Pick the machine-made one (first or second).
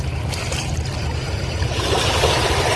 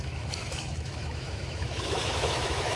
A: second